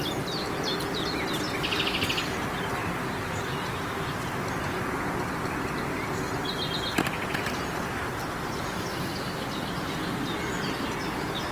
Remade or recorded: recorded